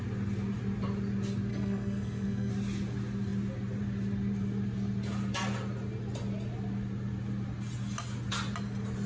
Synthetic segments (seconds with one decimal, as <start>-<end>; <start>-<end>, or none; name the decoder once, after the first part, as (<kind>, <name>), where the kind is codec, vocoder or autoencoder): 1.5-2.5 (codec, SNAC)